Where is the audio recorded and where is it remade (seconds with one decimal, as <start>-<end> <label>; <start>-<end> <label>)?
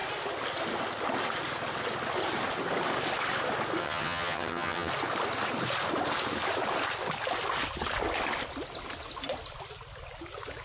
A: 0.0-3.8 recorded; 3.8-4.9 remade; 4.9-10.6 recorded